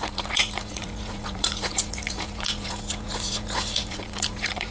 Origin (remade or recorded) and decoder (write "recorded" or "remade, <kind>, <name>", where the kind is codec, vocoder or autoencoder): remade, vocoder, Vocos